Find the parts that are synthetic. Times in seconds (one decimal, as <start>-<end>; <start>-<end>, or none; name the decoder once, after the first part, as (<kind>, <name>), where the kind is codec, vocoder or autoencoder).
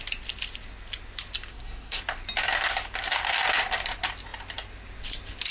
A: 1.5-2.0 (codec, SNAC)